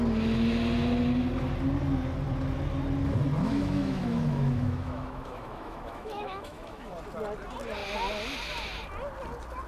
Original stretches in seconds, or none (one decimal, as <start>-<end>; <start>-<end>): 0.0-3.4; 6.9-9.7